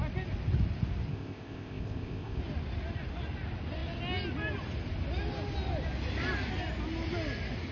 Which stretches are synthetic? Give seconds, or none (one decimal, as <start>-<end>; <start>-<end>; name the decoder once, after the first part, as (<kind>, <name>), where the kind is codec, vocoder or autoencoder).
1.1-2.4 (codec, ZipCodec)